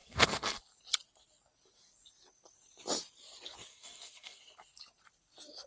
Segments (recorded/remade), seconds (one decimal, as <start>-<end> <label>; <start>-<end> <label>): 0.0-0.6 remade; 0.6-3.7 recorded; 3.7-4.4 remade; 4.4-5.7 recorded